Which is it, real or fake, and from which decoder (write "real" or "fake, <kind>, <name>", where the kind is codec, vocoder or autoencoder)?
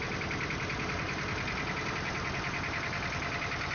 real